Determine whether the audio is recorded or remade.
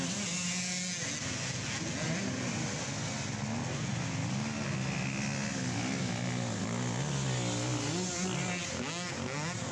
recorded